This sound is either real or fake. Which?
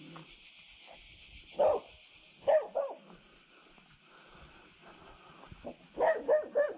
real